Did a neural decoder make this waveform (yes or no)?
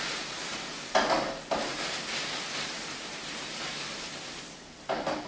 no